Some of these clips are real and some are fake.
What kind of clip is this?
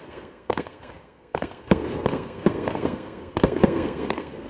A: fake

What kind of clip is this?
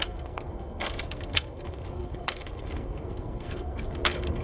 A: fake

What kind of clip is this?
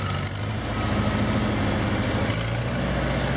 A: real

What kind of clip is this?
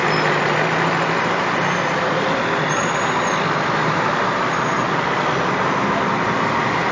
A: real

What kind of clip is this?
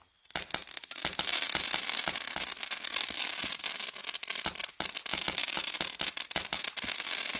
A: real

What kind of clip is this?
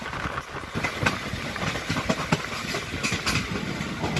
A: real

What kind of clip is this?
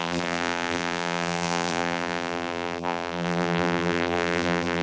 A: fake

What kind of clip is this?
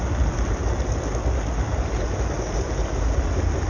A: real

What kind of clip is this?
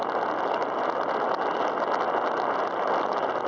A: real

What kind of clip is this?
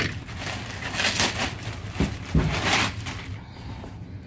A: real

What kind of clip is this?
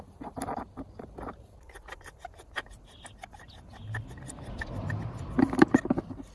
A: real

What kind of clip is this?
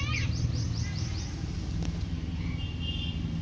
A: real